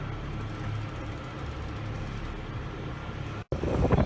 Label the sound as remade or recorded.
recorded